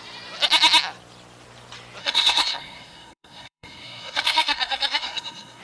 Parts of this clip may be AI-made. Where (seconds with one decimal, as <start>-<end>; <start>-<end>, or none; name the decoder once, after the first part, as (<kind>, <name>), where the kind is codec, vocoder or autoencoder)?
2.0-5.6 (codec, SNAC)